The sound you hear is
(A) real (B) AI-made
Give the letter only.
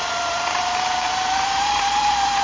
B